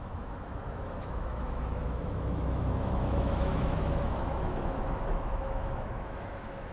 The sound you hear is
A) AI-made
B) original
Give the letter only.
A